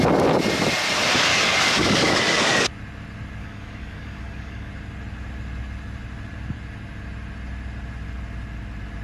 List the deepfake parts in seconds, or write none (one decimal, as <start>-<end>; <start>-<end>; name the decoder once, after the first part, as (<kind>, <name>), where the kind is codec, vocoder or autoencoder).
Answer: 1.3-2.7 (codec, DAC); 3.4-4.7